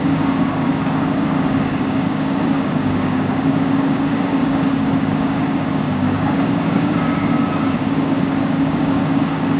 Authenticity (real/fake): fake